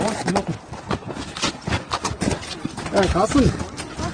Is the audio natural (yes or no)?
yes